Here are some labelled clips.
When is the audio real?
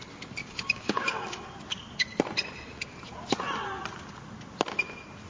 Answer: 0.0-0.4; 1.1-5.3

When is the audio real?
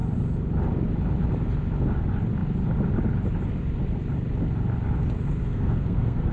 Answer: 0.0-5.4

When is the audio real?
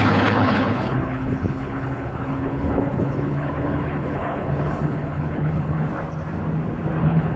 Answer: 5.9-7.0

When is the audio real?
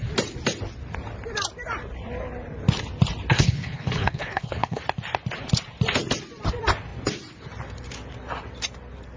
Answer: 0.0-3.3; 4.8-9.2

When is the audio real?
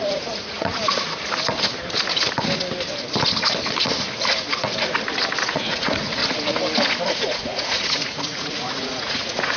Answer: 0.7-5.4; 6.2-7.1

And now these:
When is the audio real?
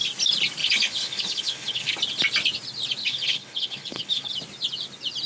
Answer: 0.0-0.6; 1.9-3.0; 4.3-5.3